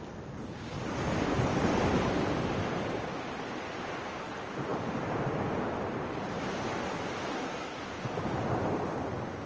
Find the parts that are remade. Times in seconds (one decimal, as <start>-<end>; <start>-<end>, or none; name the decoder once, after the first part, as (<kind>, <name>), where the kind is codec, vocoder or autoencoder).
7.3-7.8 (codec, SNAC)